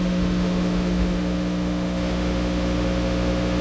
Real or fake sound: fake